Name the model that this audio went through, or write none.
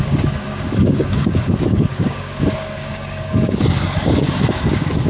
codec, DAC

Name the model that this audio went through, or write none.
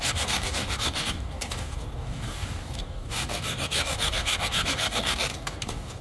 codec, DAC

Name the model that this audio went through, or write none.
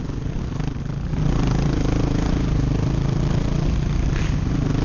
none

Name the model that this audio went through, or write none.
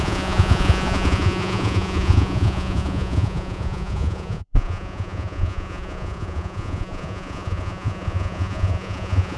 vocoder, Vocos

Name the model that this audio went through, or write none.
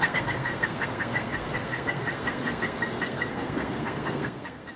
codec, SNAC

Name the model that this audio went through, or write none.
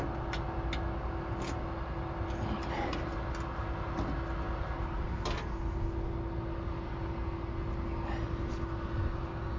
none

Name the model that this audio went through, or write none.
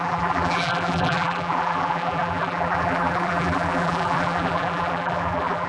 vocoder, BigVGAN v2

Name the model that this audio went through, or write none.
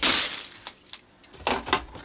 none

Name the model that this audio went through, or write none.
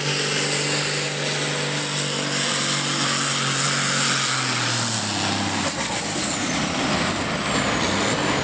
none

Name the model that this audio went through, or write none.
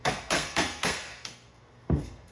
codec, SNAC